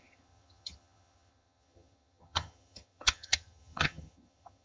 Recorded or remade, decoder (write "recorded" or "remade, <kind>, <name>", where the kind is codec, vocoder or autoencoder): remade, vocoder, HiFi-GAN